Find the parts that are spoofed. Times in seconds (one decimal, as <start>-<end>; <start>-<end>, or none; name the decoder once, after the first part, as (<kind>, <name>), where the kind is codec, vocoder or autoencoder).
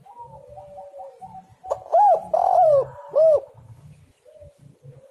2.2-3.9 (vocoder, BigVGAN v2)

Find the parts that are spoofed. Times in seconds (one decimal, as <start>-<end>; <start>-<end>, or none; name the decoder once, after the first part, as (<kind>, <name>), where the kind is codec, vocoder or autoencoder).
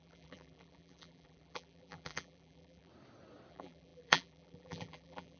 0.0-2.9 (vocoder, BigVGAN v2); 3.5-5.4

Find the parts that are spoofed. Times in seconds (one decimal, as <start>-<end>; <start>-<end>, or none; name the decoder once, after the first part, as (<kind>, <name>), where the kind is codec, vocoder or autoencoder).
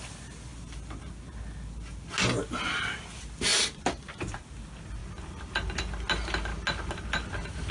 3.5-4.2 (vocoder, BigVGAN v2)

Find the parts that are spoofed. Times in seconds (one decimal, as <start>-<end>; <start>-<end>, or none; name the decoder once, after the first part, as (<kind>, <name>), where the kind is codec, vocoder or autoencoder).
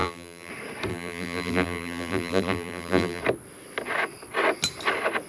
0.0-0.5 (vocoder, BigVGAN v2); 0.9-3.2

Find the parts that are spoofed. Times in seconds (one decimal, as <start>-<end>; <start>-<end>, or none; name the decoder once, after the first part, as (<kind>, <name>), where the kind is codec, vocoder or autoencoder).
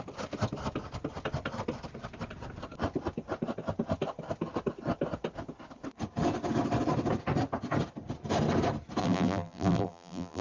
9.0-10.4 (vocoder, BigVGAN v2)